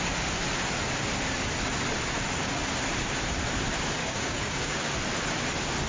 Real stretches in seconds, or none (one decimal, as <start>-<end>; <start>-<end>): 0.0-4.0; 4.9-5.9